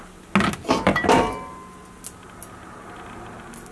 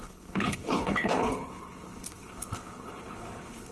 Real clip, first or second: first